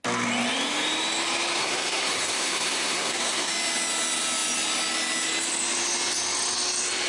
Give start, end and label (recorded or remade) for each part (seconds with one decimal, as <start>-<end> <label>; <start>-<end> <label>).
0.0-1.6 recorded; 1.6-3.5 remade; 3.5-7.1 recorded

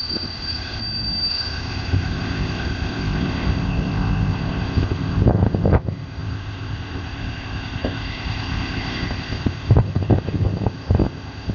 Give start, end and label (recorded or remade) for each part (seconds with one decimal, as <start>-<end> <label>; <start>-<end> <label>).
0.0-0.8 remade; 0.8-1.3 recorded; 1.3-11.5 remade

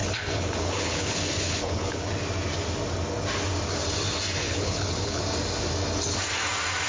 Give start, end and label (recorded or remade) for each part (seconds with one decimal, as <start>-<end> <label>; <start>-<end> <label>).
0.0-2.1 remade; 2.1-4.4 recorded; 4.4-5.2 remade; 5.2-6.9 recorded

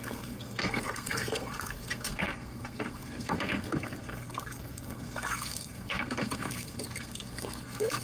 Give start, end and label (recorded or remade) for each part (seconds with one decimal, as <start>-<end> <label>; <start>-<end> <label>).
0.0-8.0 remade

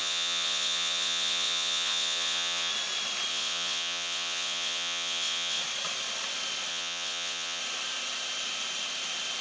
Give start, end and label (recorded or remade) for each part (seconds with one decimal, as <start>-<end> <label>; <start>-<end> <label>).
0.0-2.7 remade; 2.7-3.3 recorded; 3.3-5.6 remade; 5.6-6.7 recorded; 6.7-7.6 remade; 7.6-9.4 recorded

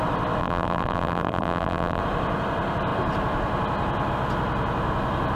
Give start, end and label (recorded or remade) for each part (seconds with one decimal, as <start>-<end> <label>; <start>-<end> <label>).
0.0-0.4 recorded; 0.4-2.0 remade; 2.0-5.4 recorded

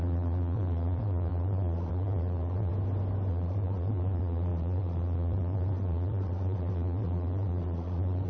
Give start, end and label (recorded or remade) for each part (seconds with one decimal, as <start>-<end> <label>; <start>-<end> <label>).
0.0-2.7 remade; 2.7-3.3 recorded; 3.3-8.3 remade